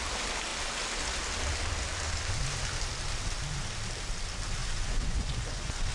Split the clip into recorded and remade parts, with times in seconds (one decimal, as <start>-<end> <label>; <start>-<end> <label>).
0.0-4.6 recorded; 4.6-5.9 remade